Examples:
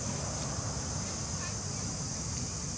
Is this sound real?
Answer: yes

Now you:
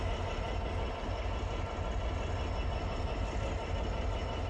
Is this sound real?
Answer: yes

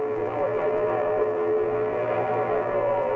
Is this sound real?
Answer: no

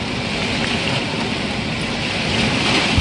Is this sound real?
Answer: no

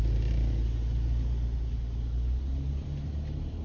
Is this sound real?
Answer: yes